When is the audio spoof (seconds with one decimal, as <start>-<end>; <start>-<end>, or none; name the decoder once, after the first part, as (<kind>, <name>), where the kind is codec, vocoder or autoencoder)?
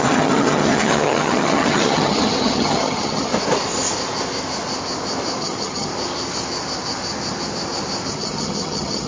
0.0-3.3 (vocoder, HiFi-GAN); 5.4-5.9; 8.1-9.1